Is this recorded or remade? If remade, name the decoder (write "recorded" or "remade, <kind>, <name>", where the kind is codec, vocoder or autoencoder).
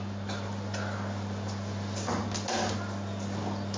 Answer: recorded